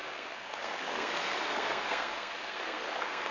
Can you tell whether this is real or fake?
fake